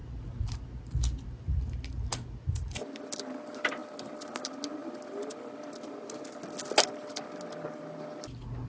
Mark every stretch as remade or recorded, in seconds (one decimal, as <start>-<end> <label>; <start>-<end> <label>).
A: 0.0-8.7 recorded